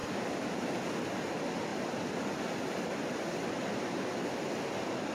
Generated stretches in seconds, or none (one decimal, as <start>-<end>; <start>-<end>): none